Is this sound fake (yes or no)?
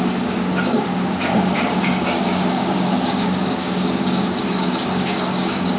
yes